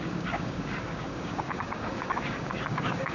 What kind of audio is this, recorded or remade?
remade